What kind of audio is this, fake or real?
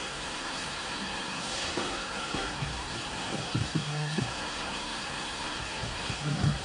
fake